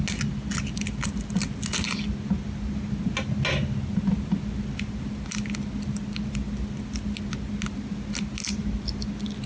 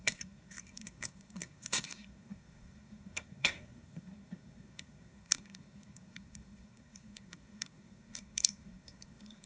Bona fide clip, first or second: first